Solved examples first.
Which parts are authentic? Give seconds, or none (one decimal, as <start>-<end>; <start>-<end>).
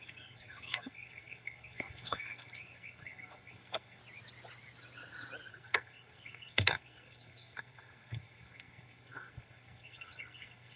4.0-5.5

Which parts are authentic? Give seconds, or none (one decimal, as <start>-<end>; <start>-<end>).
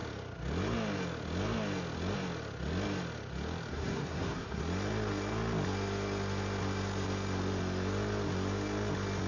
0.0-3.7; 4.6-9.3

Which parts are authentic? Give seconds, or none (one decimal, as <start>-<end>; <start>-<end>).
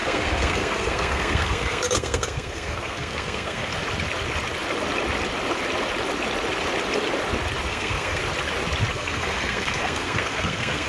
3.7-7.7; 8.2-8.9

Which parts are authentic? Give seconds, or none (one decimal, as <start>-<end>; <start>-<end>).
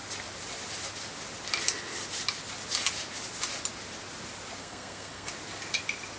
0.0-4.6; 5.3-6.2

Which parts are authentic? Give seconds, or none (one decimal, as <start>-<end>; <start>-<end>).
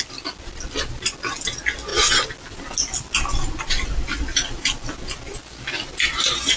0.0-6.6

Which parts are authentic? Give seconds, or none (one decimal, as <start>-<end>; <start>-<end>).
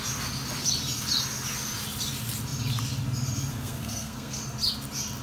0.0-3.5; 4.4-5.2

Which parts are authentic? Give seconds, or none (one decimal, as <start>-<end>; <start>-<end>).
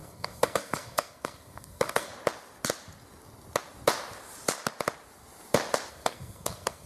2.1-5.9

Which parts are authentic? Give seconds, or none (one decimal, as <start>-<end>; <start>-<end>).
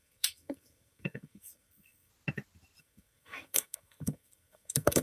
2.1-2.8